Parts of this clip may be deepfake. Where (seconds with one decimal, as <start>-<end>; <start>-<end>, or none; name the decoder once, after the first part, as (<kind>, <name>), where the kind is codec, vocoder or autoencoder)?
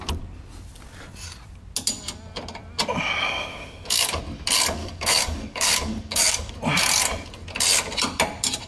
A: 3.5-4.2 (codec, DAC); 4.8-6.5